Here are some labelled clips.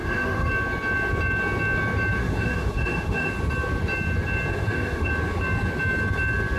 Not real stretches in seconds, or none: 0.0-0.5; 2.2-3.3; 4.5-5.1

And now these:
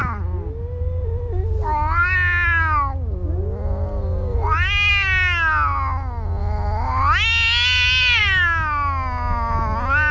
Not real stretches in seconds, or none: 6.4-7.0

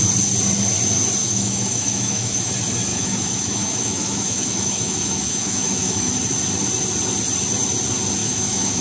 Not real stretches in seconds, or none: 1.2-2.5; 2.9-6.1; 8.2-8.8

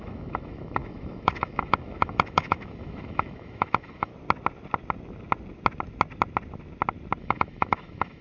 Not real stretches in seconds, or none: 0.0-4.1; 7.2-8.2

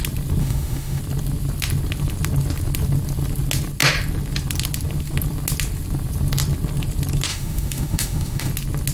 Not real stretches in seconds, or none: 0.4-1.0; 7.3-8.5

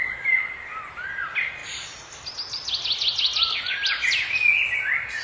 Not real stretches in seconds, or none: none

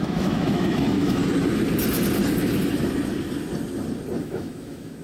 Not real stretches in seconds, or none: 0.0-1.2; 4.2-5.0